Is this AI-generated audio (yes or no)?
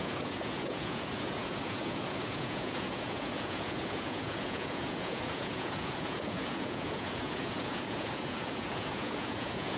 yes